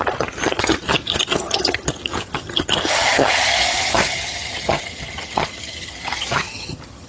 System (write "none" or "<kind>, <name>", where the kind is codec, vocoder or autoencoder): vocoder, HiFi-GAN